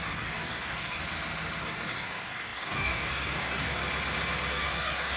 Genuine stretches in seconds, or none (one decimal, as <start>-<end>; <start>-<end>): 1.0-1.6; 3.8-4.5